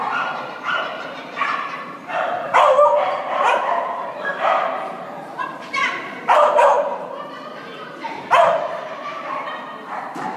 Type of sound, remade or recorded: remade